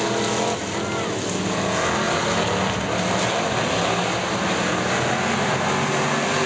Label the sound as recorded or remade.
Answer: recorded